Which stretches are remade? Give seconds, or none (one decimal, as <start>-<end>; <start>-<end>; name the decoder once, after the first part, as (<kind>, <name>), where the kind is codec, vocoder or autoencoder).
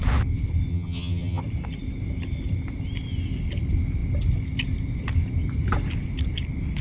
0.7-1.4 (vocoder, HiFi-GAN)